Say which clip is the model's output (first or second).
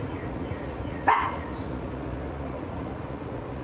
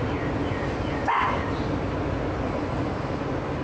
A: first